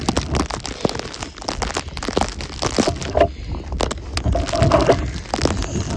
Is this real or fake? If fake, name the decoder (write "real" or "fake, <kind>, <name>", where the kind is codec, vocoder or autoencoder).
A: real